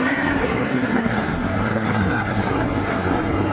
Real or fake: fake